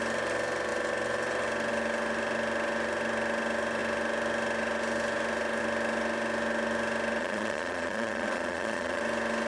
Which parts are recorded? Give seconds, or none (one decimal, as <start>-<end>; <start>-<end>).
0.0-7.2; 9.0-9.5